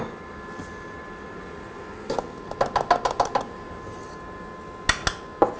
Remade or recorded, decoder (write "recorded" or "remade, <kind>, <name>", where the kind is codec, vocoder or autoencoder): recorded